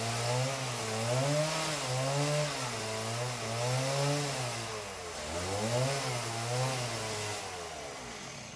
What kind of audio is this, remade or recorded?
recorded